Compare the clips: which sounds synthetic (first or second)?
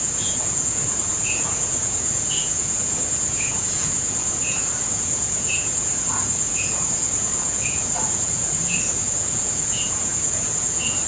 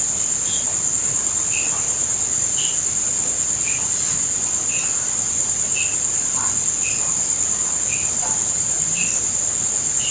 first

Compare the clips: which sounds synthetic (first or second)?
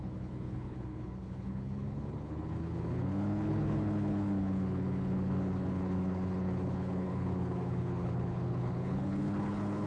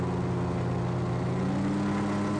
first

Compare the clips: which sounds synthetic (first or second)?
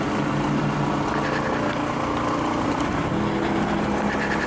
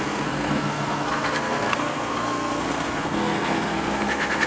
second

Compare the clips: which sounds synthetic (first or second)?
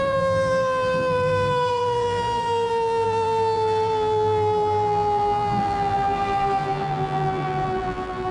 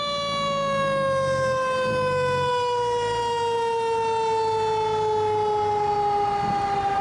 first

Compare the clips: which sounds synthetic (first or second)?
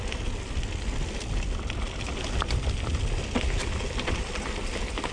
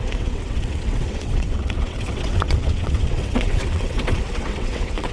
second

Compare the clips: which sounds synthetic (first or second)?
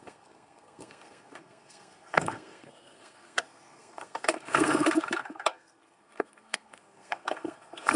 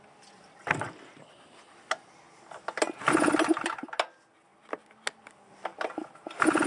first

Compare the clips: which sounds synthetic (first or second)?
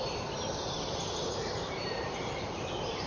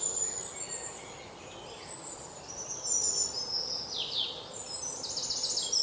first